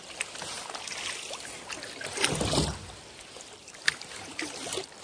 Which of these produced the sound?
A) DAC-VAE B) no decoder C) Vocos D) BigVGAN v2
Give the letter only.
B